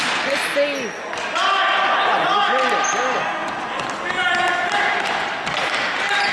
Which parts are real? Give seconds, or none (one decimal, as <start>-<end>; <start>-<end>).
0.0-3.4; 3.9-6.3